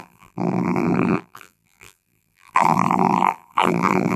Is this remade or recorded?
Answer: remade